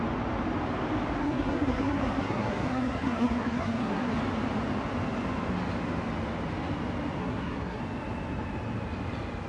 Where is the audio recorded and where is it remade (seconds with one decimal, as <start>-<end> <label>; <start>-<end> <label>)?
0.0-1.2 recorded; 1.2-4.1 remade; 4.1-7.2 recorded; 7.2-7.8 remade; 7.8-9.5 recorded

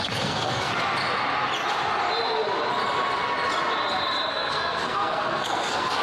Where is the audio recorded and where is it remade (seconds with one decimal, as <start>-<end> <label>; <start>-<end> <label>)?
0.0-0.7 remade; 0.7-4.3 recorded; 4.3-6.0 remade

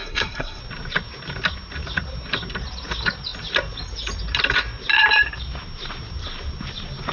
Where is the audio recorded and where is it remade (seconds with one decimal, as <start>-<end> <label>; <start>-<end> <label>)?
0.0-0.6 remade; 0.6-7.1 recorded

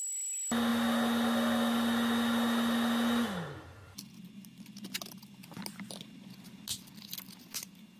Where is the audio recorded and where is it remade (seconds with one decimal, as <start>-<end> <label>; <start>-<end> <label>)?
0.0-8.0 recorded

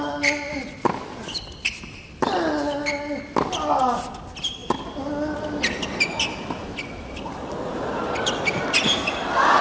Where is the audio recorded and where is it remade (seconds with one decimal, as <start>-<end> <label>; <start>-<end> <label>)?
0.0-9.6 recorded

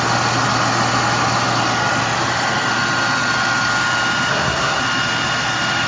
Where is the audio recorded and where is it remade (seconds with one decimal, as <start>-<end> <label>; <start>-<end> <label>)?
0.0-4.3 recorded; 4.3-4.8 remade; 4.8-5.9 recorded

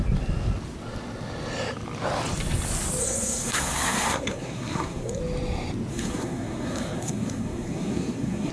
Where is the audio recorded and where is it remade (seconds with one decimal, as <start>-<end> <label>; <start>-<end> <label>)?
0.0-3.0 recorded; 3.0-5.2 remade; 5.2-5.9 recorded; 5.9-8.5 remade

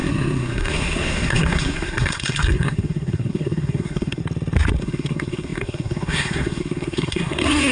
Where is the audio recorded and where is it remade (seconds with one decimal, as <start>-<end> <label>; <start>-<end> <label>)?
0.0-4.2 remade; 4.2-4.8 recorded; 4.8-7.7 remade